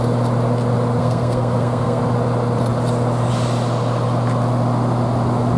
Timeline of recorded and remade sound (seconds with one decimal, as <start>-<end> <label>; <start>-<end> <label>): 0.0-1.0 recorded; 1.0-2.0 remade; 2.0-5.6 recorded